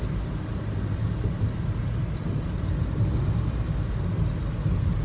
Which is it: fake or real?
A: real